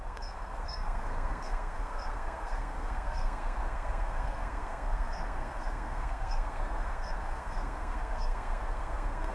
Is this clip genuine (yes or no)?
no